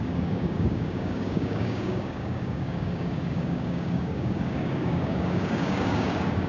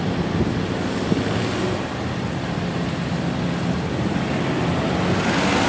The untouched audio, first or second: second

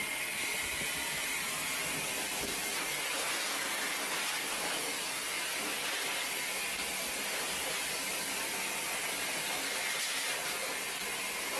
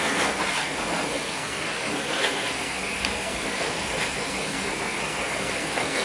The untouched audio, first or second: first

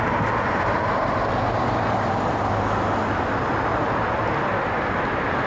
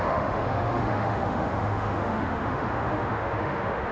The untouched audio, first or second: first